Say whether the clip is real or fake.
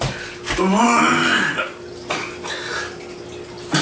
real